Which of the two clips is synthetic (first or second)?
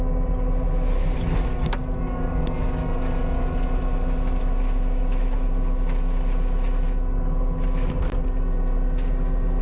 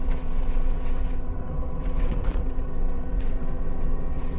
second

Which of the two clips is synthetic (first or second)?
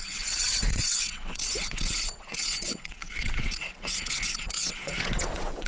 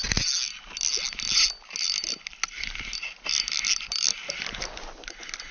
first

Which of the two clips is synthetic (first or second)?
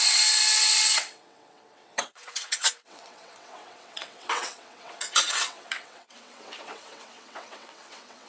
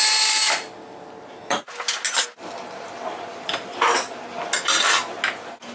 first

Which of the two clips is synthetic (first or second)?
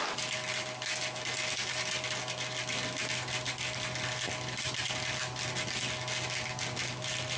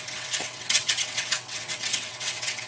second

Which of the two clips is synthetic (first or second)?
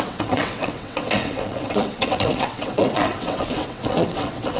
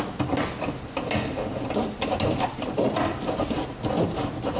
first